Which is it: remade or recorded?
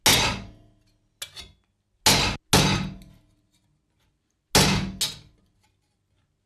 recorded